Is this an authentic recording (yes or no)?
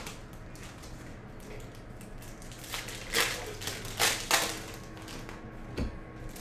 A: yes